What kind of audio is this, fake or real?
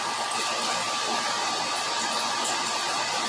real